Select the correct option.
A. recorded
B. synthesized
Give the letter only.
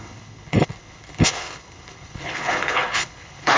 B